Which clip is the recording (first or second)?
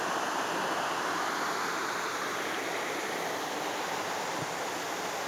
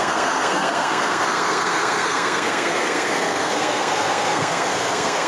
first